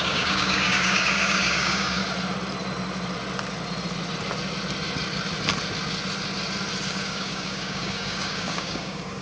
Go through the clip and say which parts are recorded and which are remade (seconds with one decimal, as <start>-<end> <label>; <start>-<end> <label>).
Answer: 0.0-2.0 remade; 2.0-6.9 recorded; 6.9-9.2 remade